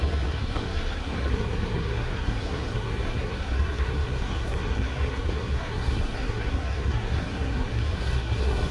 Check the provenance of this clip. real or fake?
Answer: fake